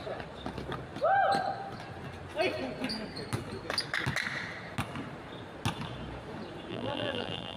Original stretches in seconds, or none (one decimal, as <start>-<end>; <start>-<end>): 0.0-6.7